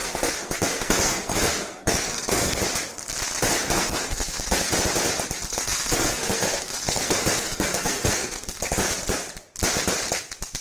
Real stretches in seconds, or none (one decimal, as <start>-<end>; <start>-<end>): 2.6-3.5; 4.7-5.5; 8.6-10.6